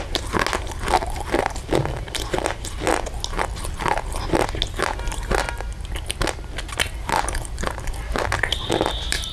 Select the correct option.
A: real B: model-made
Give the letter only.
A